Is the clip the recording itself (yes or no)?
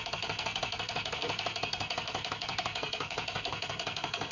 no